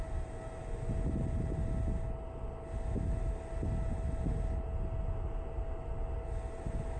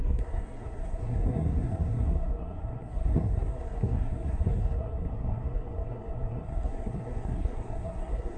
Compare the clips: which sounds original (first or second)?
first